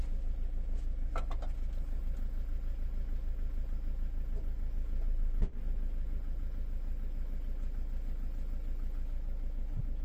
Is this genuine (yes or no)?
yes